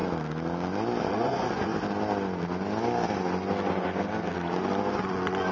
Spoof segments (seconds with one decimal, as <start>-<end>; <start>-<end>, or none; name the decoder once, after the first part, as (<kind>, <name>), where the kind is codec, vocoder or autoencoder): 1.1-1.7 (vocoder, Vocos); 5.0-5.5